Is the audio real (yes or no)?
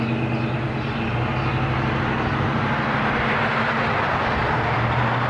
yes